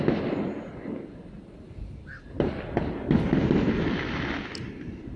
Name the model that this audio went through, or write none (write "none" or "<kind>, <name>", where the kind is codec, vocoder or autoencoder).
none